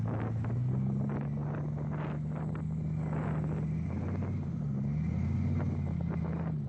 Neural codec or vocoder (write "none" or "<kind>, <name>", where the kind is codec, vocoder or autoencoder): none